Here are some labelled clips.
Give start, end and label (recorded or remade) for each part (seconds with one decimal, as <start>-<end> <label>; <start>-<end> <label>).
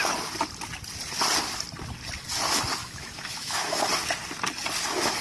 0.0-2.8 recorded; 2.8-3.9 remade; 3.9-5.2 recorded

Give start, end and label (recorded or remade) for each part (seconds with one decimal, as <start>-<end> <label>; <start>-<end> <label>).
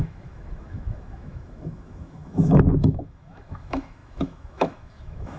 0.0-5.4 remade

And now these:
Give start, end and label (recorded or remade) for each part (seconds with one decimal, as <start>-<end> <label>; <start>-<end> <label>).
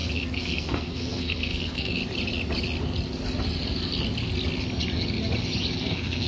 0.0-2.0 remade; 2.0-5.8 recorded; 5.8-6.3 remade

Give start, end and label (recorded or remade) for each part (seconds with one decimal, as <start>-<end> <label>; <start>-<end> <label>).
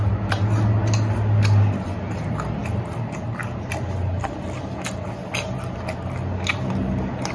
0.0-7.3 recorded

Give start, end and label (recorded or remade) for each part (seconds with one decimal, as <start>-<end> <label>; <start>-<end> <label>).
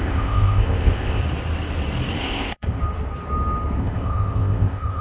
0.0-1.2 remade; 1.2-2.2 recorded; 2.2-2.8 remade; 2.8-3.8 recorded; 3.8-5.0 remade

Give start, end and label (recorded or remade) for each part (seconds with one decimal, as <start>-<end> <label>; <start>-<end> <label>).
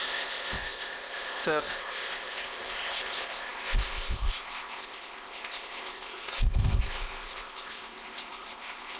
0.0-9.0 remade